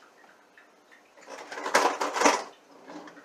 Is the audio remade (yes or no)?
no